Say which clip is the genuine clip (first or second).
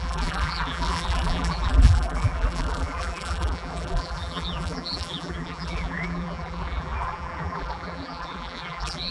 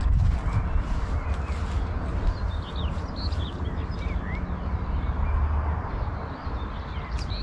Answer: second